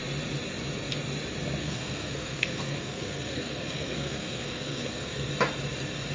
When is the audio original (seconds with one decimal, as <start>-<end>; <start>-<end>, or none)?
0.0-1.6; 5.3-6.1